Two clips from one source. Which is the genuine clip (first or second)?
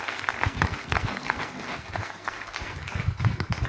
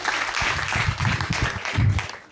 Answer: second